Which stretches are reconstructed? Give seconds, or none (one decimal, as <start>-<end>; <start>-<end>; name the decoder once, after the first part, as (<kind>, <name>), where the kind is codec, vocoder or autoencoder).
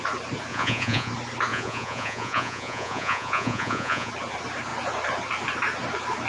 0.5-1.1 (vocoder, Vocos); 1.5-4.1